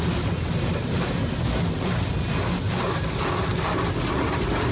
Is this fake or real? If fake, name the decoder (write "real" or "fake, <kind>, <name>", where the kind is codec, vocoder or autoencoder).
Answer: real